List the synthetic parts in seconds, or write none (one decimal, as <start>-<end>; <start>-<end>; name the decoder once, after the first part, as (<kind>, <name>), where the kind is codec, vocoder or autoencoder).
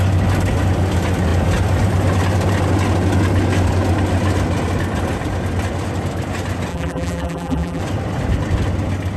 6.7-7.8 (vocoder, BigVGAN v2)